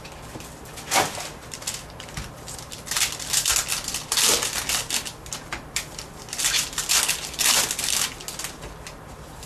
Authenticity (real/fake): real